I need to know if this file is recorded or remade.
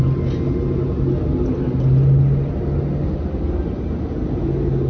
recorded